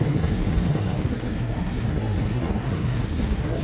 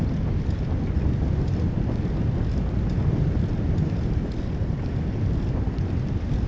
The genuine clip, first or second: second